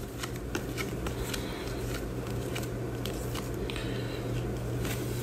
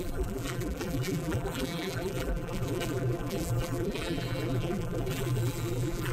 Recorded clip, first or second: first